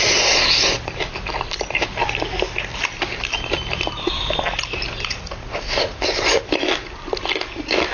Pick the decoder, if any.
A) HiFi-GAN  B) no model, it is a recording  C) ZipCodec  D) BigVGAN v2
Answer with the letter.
B